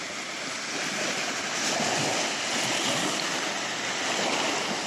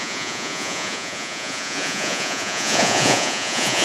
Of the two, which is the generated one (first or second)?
second